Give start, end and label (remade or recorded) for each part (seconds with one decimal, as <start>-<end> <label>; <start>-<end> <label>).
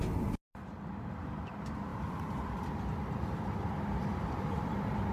0.0-1.9 recorded; 1.9-5.1 remade